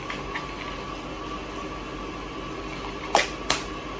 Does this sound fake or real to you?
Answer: real